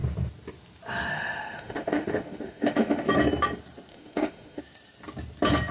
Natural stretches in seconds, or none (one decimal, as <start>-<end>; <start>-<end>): 0.0-1.1; 3.1-3.9; 4.6-5.7